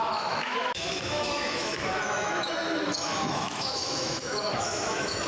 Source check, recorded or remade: remade